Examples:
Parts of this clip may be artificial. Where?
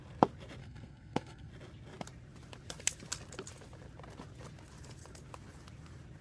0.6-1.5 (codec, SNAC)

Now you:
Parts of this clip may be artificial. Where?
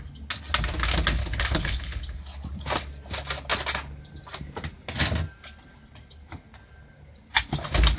1.2-2.0 (codec, HILCodec)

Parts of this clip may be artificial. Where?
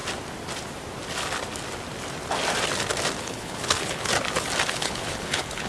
3.2-4.1 (codec, HILCodec); 4.7-5.7